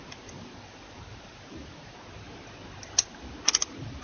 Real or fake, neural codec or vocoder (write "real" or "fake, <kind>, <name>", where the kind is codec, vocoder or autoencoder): real